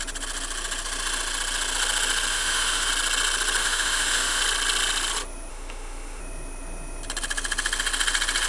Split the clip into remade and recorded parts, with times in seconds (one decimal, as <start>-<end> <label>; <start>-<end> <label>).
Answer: 0.0-2.3 recorded; 2.3-2.9 remade; 2.9-3.6 recorded; 3.6-4.4 remade; 4.4-5.5 recorded; 5.5-6.2 remade; 6.2-8.5 recorded